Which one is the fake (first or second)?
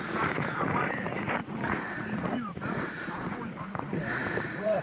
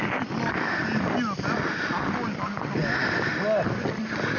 first